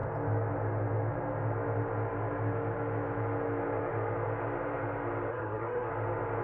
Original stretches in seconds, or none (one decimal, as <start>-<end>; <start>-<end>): 0.0-5.3; 5.9-6.4